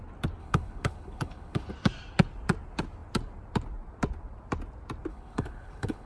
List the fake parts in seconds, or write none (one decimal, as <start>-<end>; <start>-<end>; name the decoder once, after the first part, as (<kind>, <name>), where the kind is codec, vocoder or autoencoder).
0.4-1.7 (codec, HILCodec); 5.1-6.1